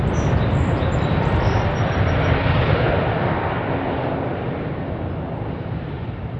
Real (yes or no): yes